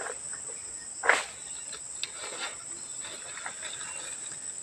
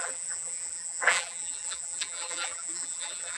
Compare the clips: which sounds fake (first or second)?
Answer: second